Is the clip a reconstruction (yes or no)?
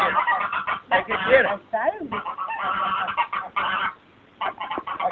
no